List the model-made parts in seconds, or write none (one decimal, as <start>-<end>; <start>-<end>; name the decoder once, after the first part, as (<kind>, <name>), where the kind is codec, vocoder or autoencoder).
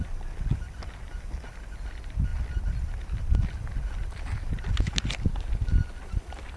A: none